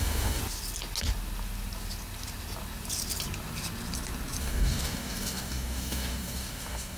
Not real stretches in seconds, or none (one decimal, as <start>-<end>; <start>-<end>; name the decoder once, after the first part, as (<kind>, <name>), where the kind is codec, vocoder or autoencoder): 0.0-0.4 (codec, DAC); 4.4-7.0